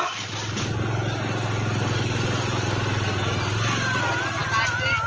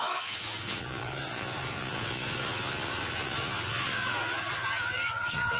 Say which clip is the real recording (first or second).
first